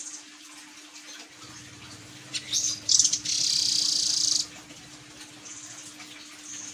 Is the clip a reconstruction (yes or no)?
no